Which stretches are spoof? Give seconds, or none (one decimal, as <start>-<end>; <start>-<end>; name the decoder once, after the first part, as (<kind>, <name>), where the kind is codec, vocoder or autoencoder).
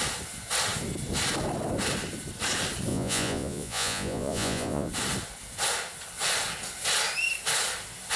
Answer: 2.9-4.9 (vocoder, Vocos)